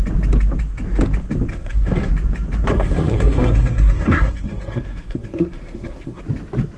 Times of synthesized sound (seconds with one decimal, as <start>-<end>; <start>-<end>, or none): 1.5-2.1; 2.7-6.2